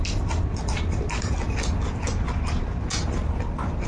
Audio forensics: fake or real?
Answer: real